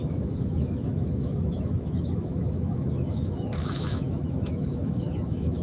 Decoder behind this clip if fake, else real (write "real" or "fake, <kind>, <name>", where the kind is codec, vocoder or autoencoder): fake, autoencoder, DAC-VAE